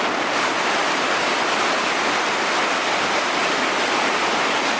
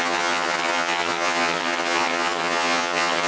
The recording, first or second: first